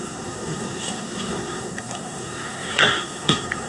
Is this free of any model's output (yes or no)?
no